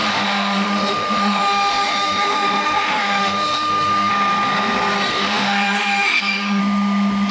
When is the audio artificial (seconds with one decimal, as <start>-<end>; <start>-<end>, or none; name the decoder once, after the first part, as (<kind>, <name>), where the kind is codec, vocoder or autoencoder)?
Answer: 0.0-4.1 (autoencoder, DAC-VAE); 5.1-6.6